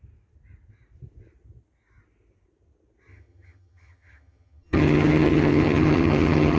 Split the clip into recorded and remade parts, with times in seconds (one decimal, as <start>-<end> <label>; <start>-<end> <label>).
0.0-3.1 recorded; 3.1-6.6 remade